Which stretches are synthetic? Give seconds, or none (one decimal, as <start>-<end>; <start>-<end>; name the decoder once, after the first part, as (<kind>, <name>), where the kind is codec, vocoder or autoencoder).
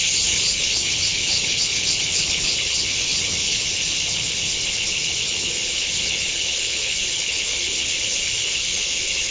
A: 0.0-9.3 (codec, HILCodec)